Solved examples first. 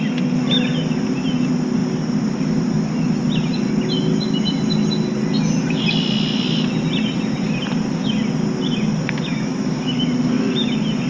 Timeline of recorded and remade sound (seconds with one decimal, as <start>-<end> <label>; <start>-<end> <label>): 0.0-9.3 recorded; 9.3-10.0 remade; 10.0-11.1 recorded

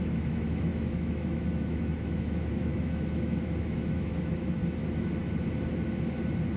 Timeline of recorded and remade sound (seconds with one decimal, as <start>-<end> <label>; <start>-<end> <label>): 0.0-4.6 remade; 4.6-6.6 recorded

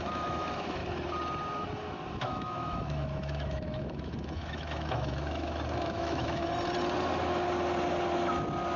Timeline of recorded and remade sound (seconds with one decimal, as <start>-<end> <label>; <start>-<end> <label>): 0.0-0.8 remade; 0.8-2.2 recorded; 2.2-6.4 remade; 6.4-8.8 recorded

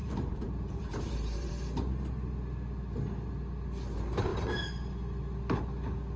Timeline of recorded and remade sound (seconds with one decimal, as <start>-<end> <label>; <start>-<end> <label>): 0.0-1.5 remade; 1.5-6.2 recorded

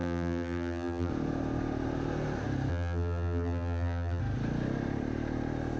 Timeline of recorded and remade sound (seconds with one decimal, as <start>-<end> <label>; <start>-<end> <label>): 0.0-1.1 remade; 1.1-2.7 recorded; 2.7-4.2 remade; 4.2-5.8 recorded

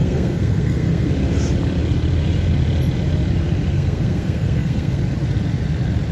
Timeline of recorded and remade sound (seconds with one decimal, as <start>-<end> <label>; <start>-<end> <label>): 0.0-1.1 remade; 1.1-3.7 recorded; 3.7-5.0 remade; 5.0-6.1 recorded

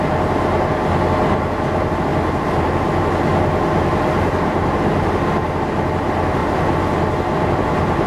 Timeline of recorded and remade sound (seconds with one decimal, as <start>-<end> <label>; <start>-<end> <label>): 0.0-2.1 recorded; 2.1-3.0 remade; 3.0-6.4 recorded; 6.4-8.1 remade